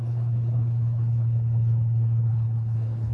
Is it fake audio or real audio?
fake